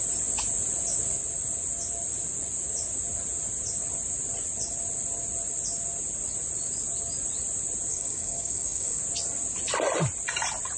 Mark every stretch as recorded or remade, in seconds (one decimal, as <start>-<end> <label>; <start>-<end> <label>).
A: 0.0-7.9 recorded; 7.9-9.0 remade; 9.0-10.8 recorded